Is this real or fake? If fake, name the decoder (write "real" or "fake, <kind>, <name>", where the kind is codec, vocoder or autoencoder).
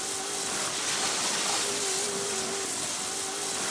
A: real